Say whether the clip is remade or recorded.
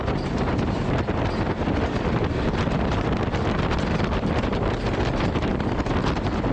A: recorded